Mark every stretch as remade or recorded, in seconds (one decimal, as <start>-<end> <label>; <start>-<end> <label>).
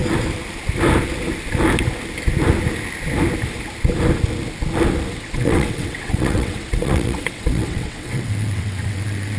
0.0-5.1 recorded; 5.1-9.4 remade